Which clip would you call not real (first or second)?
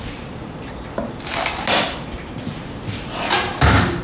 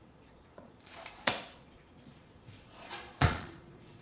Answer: second